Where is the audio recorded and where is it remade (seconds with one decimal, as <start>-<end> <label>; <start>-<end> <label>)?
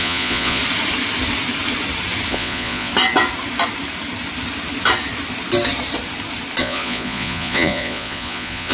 0.0-0.6 remade; 0.6-2.3 recorded; 2.3-2.9 remade; 2.9-6.6 recorded; 6.6-8.7 remade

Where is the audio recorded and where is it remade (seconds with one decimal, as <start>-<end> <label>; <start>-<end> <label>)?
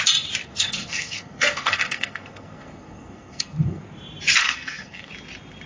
0.0-0.4 recorded; 0.4-3.8 remade; 3.8-4.4 recorded; 4.4-5.1 remade; 5.1-5.7 recorded